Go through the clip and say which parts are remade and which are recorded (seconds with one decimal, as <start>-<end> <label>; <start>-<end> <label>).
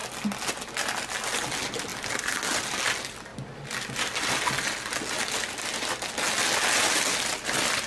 0.0-7.9 recorded